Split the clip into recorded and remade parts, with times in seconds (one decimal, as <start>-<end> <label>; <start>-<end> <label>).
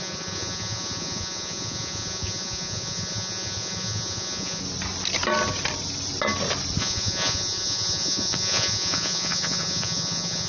0.0-4.6 remade; 4.6-6.8 recorded; 6.8-10.5 remade